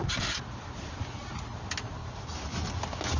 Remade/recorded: recorded